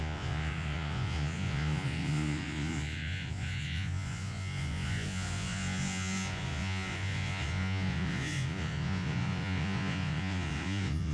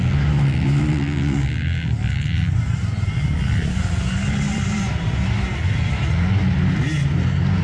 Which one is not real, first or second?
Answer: first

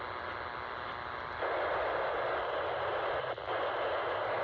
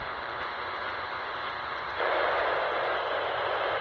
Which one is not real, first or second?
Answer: second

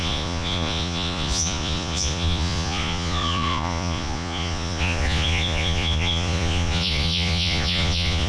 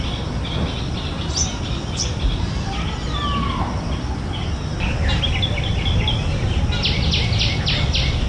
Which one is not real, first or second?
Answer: first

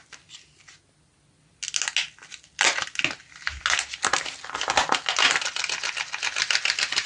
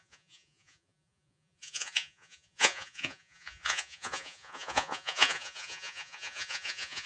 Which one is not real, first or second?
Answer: second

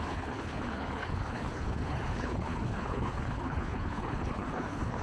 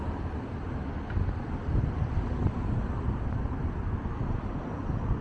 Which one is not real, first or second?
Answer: first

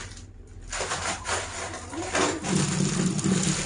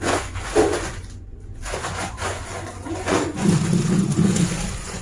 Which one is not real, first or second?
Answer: second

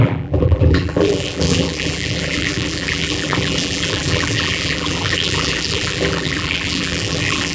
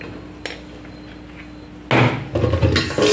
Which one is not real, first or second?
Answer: first